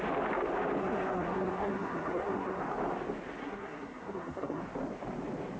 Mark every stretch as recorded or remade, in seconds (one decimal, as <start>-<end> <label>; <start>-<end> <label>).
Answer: 0.0-0.8 recorded; 0.8-2.6 remade; 2.6-3.4 recorded; 3.4-4.6 remade; 4.6-5.6 recorded